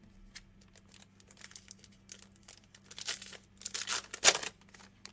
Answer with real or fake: real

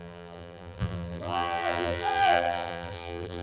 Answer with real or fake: fake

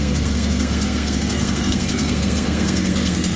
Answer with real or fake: fake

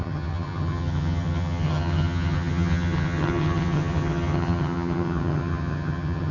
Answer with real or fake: fake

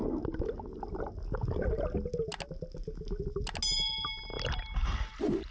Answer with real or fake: real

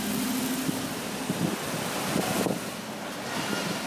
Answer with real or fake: real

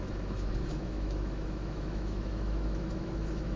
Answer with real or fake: fake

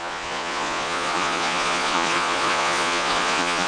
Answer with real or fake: fake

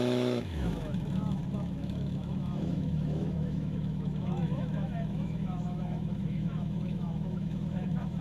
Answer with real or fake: fake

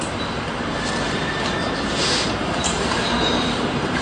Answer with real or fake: fake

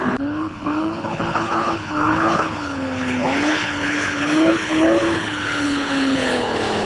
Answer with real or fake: fake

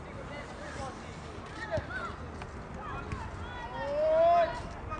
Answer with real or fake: real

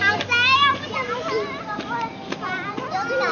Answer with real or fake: real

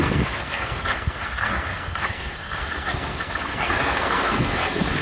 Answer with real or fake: fake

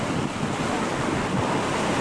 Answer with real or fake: real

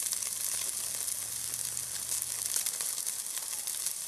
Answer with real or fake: real